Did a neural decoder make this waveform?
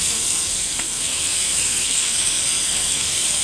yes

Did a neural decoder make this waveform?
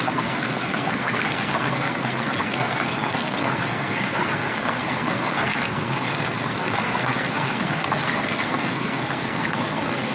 yes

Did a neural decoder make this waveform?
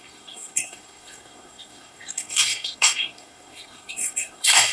yes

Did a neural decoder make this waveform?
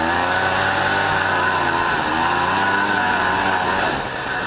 no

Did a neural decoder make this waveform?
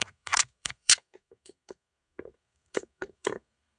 yes